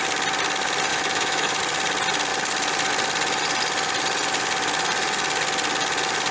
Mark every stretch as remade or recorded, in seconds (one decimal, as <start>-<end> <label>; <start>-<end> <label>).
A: 0.0-0.9 recorded; 0.9-1.6 remade; 1.6-6.3 recorded